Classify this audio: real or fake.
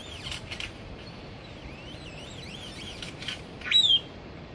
fake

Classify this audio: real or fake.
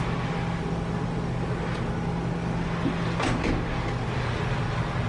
real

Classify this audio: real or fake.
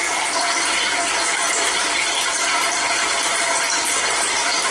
fake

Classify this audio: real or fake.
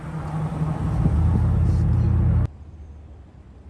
real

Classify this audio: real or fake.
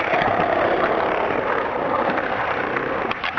fake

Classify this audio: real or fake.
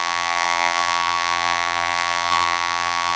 fake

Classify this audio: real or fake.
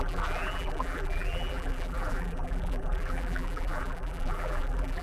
fake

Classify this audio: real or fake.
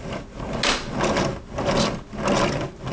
real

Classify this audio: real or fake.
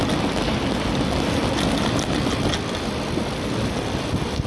real